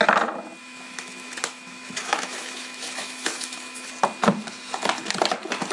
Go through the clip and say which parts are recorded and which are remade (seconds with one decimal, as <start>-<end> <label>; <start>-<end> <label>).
0.0-0.6 recorded; 0.6-3.9 remade; 3.9-5.7 recorded